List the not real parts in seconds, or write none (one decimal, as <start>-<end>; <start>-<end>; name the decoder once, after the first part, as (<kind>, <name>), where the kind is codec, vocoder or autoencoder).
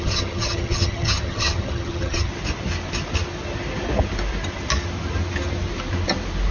0.0-2.3 (vocoder, HiFi-GAN)